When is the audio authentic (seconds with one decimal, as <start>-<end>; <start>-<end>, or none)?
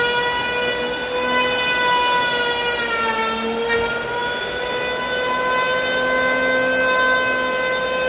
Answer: 0.0-8.1